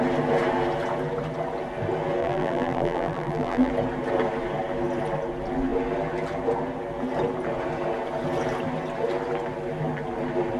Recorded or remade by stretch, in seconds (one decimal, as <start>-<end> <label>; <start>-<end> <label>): 0.0-2.2 recorded; 2.2-3.7 remade; 3.7-10.6 recorded